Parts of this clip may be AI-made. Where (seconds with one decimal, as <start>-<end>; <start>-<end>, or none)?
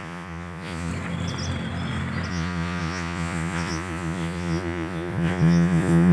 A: 0.0-0.9; 2.3-6.1